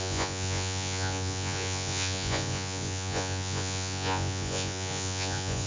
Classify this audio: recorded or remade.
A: remade